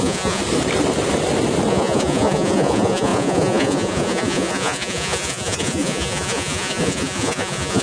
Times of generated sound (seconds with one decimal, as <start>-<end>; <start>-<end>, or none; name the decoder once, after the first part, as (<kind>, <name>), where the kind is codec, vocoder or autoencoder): 0.0-0.4 (vocoder, Vocos); 1.7-7.8